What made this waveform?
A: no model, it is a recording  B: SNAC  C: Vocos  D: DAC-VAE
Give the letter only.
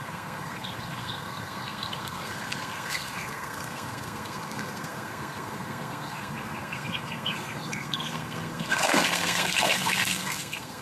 B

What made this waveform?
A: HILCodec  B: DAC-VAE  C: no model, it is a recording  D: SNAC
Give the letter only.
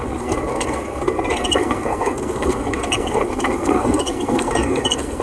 D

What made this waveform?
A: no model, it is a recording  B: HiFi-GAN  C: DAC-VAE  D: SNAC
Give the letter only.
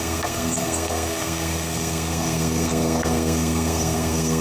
D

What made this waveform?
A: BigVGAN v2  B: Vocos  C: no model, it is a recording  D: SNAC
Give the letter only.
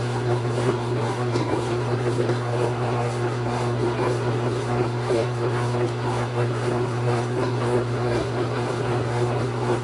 D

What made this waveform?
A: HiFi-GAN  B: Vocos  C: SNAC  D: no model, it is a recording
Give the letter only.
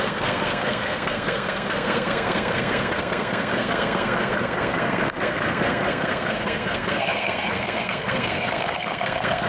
C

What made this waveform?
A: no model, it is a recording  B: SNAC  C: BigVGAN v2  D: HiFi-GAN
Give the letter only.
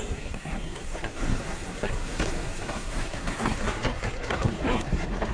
B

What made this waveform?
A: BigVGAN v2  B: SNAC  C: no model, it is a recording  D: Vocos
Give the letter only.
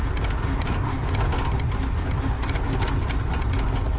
C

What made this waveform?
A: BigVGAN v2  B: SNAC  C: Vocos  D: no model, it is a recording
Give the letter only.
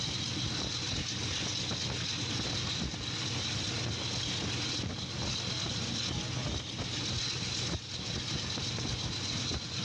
D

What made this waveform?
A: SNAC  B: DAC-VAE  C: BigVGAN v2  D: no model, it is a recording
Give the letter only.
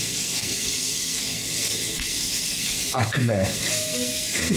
A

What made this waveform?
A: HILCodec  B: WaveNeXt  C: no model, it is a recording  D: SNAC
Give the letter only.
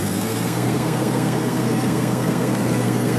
D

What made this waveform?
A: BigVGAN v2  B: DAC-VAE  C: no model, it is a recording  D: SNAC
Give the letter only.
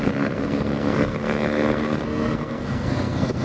D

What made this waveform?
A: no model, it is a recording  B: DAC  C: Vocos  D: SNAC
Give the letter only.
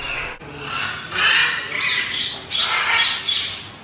A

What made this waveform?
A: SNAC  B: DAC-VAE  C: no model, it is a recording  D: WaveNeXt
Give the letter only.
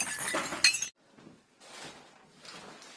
C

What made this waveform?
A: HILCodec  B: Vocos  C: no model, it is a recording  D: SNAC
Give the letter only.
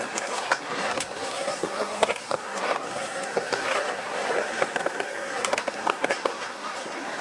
D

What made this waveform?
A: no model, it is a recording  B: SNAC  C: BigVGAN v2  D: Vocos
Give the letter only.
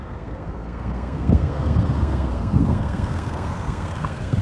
B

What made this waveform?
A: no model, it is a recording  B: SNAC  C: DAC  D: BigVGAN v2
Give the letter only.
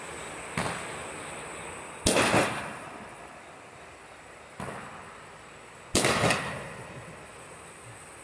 A